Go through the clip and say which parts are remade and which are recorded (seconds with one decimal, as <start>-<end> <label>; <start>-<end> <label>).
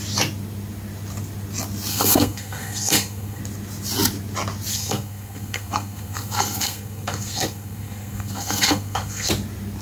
0.0-1.9 recorded; 1.9-3.4 remade; 3.4-4.7 recorded; 4.7-9.3 remade; 9.3-9.8 recorded